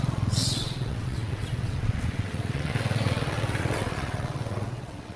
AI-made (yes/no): yes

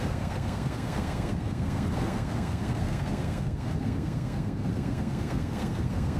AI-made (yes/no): yes